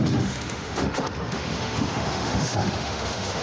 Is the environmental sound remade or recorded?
remade